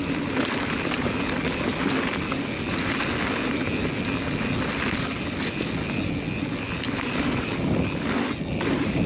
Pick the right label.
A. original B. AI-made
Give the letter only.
A